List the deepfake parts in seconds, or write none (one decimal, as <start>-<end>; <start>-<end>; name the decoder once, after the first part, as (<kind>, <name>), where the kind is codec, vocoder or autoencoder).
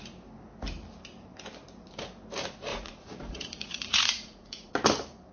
2.7-4.7 (vocoder, Vocos)